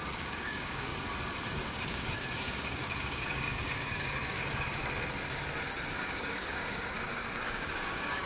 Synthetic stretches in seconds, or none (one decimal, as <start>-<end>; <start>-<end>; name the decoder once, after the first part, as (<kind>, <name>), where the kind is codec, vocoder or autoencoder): 0.0-0.9 (codec, DAC); 1.6-4.8; 5.9-8.3